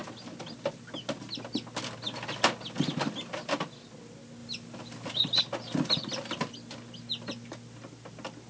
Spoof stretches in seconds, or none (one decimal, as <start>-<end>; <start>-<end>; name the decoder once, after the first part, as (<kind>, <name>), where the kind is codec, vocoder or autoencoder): none